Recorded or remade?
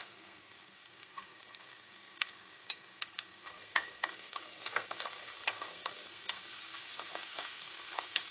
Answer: remade